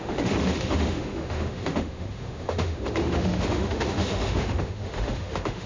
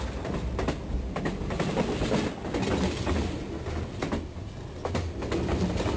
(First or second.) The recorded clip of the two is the second